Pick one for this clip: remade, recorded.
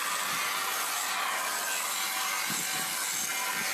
recorded